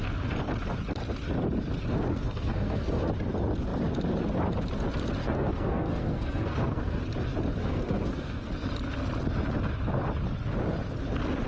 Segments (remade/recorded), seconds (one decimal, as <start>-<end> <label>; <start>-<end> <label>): 0.0-2.1 recorded; 2.1-3.1 remade; 3.1-5.2 recorded; 5.2-7.0 remade; 7.0-7.6 recorded; 7.6-8.5 remade; 8.5-11.5 recorded